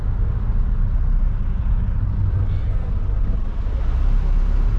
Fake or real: real